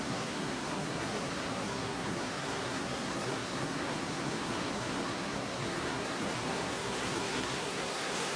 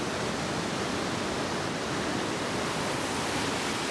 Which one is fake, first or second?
first